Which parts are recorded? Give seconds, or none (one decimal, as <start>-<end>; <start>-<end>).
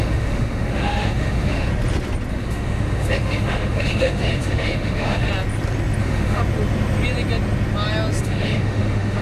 1.7-2.3; 5.3-6.0; 6.4-8.2